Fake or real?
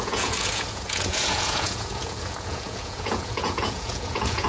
fake